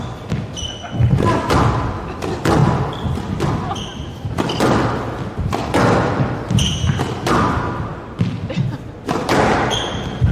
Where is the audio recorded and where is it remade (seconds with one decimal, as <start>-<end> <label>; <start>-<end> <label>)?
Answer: 0.0-10.3 recorded